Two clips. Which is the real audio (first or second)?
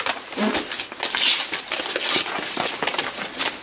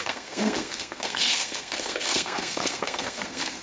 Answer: first